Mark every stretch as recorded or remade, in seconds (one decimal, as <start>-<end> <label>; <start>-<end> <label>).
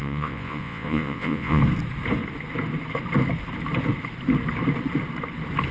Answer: 0.0-1.6 remade; 1.6-5.7 recorded